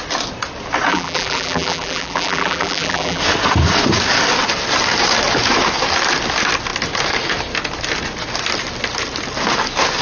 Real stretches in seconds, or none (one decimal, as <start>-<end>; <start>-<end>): 0.0-0.9; 3.2-10.0